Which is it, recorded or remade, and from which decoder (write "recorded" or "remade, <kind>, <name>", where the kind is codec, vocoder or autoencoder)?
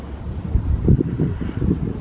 recorded